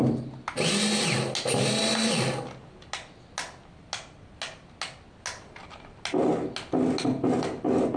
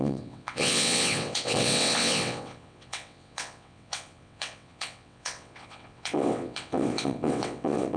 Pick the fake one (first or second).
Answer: second